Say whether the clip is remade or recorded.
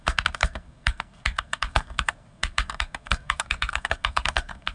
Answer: remade